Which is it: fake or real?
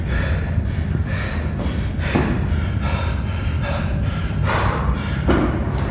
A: real